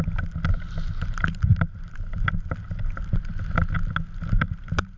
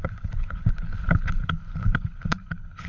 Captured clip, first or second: first